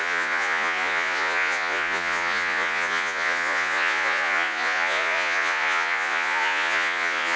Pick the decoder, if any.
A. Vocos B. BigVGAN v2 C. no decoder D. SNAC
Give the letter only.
A